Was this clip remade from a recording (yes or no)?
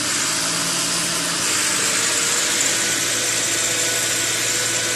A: no